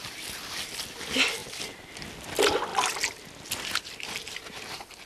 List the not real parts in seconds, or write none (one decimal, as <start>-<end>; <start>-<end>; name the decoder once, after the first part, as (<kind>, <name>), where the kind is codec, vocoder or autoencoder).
none